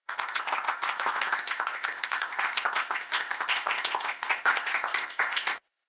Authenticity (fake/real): fake